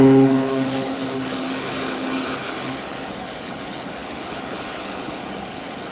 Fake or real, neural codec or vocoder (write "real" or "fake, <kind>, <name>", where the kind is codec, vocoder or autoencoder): fake, codec, HILCodec